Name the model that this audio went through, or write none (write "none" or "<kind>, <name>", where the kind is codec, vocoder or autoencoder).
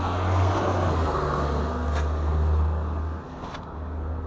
codec, SNAC